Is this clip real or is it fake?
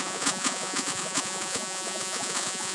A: fake